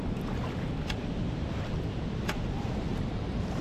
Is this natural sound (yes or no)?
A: yes